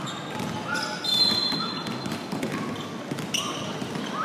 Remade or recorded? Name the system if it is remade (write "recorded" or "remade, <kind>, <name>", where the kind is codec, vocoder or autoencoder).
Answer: recorded